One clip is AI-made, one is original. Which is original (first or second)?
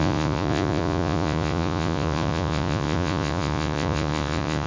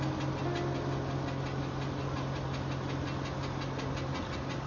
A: second